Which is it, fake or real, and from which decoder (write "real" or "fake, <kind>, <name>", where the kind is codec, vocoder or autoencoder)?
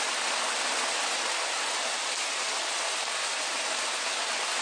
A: real